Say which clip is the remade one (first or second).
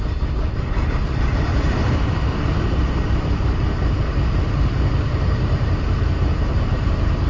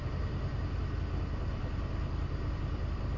first